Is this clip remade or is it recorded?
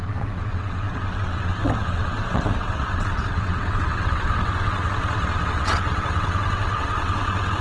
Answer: remade